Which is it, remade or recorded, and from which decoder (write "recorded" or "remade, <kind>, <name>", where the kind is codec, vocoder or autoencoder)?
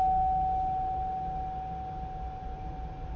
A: recorded